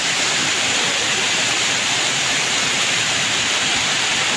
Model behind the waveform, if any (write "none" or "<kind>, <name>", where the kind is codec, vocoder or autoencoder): vocoder, BigVGAN v2